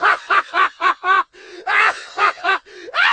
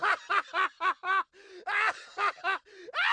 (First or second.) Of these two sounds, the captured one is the second